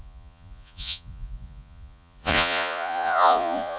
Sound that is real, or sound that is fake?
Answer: fake